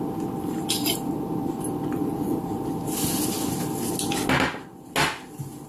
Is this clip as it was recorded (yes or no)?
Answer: yes